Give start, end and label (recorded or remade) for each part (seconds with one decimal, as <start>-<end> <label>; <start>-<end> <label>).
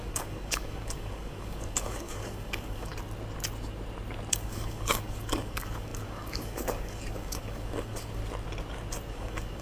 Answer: 0.0-2.9 remade; 2.9-4.3 recorded; 4.3-8.2 remade; 8.2-9.1 recorded; 9.1-9.6 remade